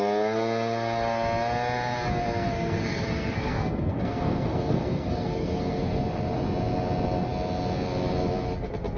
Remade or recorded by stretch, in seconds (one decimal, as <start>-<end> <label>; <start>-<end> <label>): 0.0-2.2 recorded; 2.2-5.8 remade; 5.8-9.0 recorded